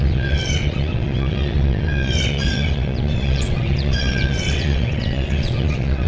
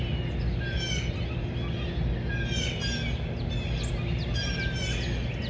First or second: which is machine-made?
first